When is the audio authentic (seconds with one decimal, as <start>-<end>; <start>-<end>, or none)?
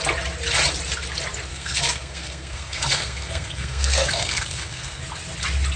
0.0-1.5; 5.0-5.8